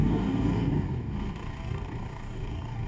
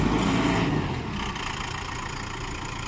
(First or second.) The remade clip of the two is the first